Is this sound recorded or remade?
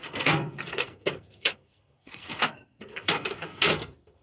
remade